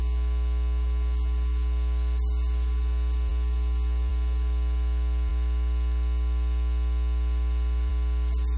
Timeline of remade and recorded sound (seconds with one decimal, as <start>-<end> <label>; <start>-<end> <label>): 0.0-8.6 recorded